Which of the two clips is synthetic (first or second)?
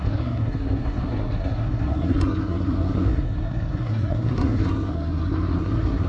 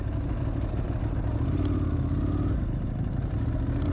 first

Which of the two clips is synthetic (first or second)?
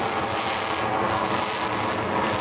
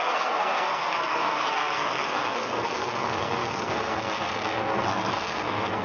second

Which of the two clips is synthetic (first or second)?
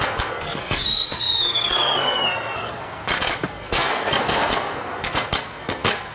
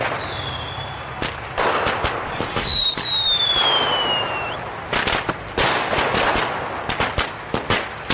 first